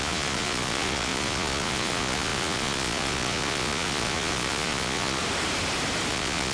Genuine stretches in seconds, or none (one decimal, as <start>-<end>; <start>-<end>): 5.2-6.1